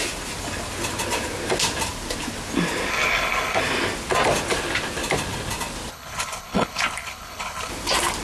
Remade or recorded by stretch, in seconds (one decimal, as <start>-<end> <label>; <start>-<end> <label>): 0.0-2.9 recorded; 2.9-3.6 remade; 3.6-5.9 recorded; 5.9-7.7 remade; 7.7-8.2 recorded